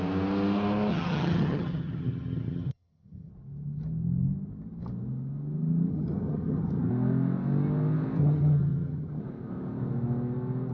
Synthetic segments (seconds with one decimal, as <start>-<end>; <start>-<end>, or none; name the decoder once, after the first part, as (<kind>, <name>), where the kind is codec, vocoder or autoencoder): 0.9-3.3 (vocoder, HiFi-GAN); 5.9-6.9; 8.2-9.2